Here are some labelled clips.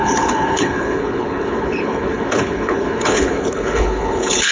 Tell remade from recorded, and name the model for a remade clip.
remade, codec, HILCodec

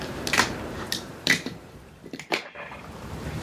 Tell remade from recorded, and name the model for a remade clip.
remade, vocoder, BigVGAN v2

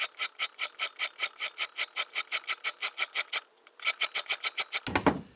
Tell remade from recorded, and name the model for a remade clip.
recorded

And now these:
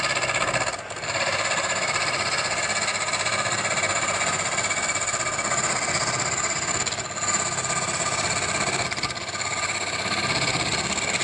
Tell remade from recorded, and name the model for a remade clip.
recorded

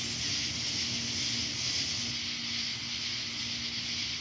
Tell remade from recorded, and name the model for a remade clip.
recorded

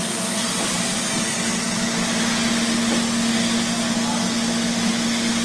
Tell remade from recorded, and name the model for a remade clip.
recorded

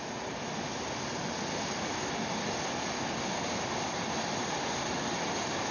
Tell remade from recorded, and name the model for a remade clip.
recorded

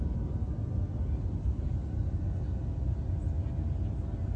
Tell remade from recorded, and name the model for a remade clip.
recorded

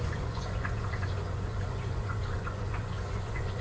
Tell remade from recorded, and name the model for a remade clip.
remade, vocoder, Vocos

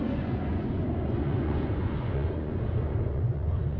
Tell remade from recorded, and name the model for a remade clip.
remade, vocoder, Vocos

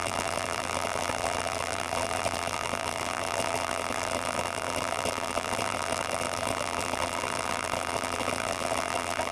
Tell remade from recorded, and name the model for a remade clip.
remade, vocoder, BigVGAN v2